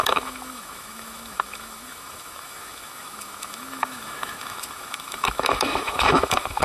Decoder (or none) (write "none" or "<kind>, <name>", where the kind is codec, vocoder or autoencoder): autoencoder, DAC-VAE